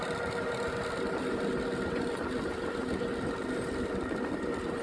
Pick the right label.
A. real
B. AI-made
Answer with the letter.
A